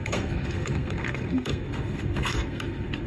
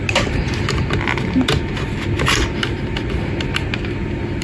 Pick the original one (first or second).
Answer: second